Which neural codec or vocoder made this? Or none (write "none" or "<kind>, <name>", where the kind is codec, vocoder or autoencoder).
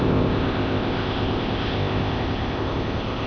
codec, ZipCodec